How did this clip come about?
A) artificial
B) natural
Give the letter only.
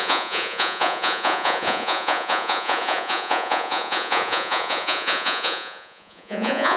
A